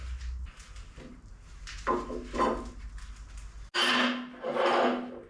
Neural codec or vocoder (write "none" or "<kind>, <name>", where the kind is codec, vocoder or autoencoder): none